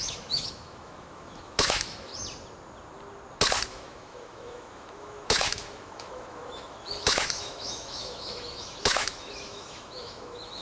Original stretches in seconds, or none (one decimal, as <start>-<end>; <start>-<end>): 2.1-3.7

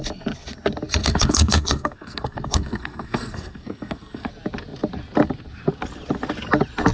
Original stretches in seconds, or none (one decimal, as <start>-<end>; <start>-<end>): 0.0-1.0; 4.3-6.9

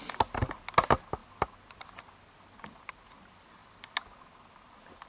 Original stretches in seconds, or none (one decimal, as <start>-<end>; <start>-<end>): 0.0-5.1

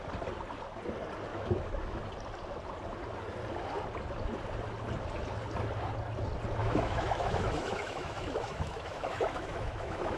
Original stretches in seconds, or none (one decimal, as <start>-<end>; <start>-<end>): 0.0-1.3; 2.0-6.6

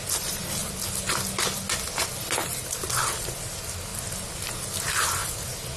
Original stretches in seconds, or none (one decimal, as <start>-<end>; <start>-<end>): 0.0-5.8

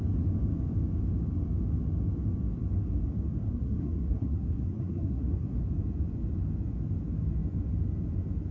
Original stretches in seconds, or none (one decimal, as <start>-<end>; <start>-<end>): 0.0-3.4; 5.6-8.5

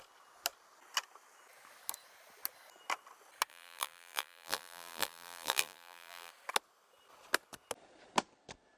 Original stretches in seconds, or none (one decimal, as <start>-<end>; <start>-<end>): 0.0-3.5; 6.3-8.8

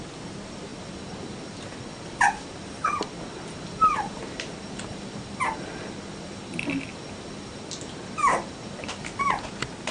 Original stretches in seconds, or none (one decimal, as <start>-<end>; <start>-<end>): 0.0-9.9